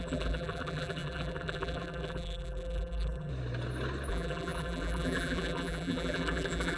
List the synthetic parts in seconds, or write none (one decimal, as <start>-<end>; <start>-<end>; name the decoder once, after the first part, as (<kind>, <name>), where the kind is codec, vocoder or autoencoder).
0.0-3.3 (vocoder, BigVGAN v2); 4.1-6.8